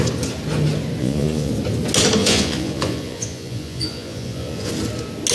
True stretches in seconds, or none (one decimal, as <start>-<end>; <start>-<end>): 0.0-1.0; 1.5-2.2; 4.7-5.3